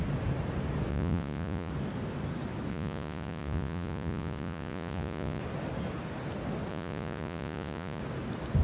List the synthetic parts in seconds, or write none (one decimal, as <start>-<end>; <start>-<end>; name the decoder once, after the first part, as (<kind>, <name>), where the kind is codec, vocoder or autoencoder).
0.9-1.7 (vocoder, Vocos); 2.7-5.4; 6.7-8.0